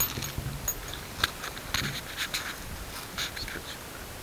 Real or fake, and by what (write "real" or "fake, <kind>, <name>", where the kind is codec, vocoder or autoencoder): real